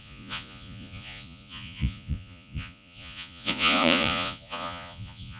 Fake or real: fake